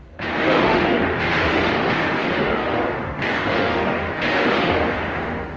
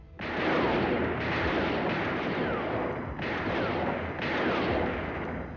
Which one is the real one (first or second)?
second